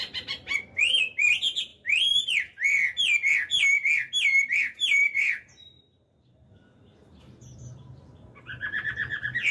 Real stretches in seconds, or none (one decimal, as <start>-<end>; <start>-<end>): 0.0-4.6; 8.9-9.5